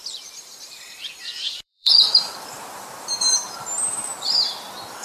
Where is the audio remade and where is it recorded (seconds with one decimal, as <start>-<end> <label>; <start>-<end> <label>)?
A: 0.0-4.1 remade; 4.1-5.0 recorded